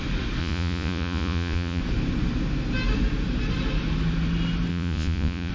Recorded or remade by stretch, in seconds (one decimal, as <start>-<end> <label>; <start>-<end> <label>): 0.0-0.4 recorded; 0.4-1.8 remade; 1.8-4.7 recorded; 4.7-5.5 remade